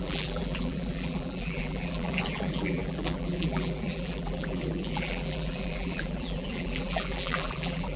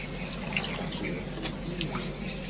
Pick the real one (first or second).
second